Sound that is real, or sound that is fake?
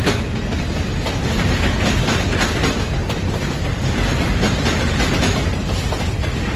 real